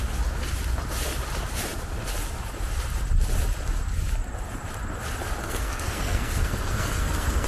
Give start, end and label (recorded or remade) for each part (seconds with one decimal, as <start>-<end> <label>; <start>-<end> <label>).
0.0-5.4 recorded; 5.4-7.5 remade